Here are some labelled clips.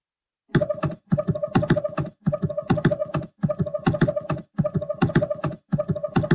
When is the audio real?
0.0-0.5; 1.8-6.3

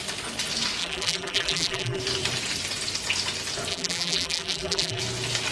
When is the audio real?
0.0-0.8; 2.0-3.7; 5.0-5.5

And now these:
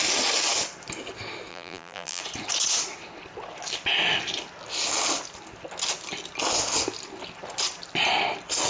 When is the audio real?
0.0-1.5; 2.2-8.7